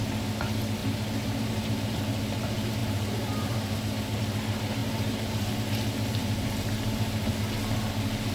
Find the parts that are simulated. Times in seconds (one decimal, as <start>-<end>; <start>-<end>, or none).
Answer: 0.8-2.0; 2.8-4.2; 4.8-5.5; 6.2-7.3